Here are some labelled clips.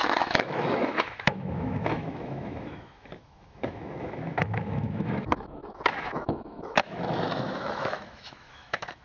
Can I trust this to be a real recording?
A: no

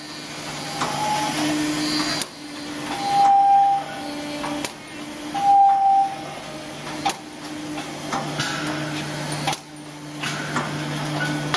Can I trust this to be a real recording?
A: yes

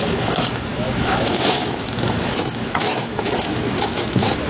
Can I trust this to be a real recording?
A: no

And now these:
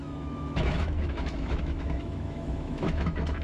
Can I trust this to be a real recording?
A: no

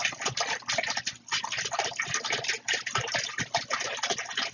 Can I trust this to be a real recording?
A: yes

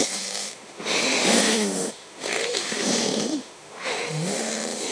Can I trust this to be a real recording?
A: no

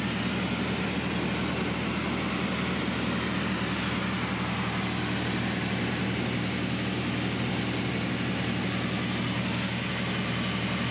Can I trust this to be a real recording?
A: yes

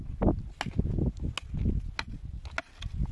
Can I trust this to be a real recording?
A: yes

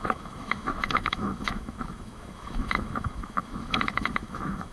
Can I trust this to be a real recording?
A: no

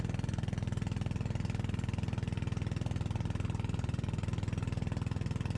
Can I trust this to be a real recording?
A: yes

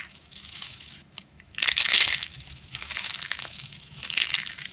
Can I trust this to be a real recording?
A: no